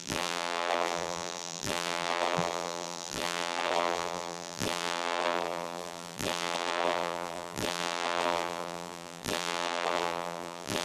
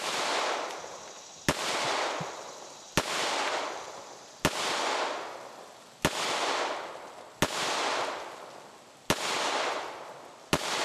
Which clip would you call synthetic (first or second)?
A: first